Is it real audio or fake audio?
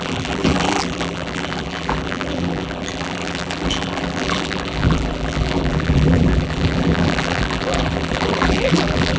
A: fake